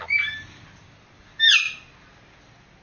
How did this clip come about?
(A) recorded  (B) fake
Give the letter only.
A